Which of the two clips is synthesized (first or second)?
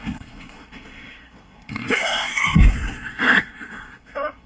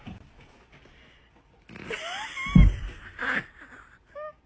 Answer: first